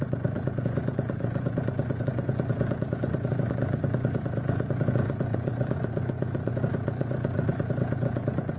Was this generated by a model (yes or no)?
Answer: yes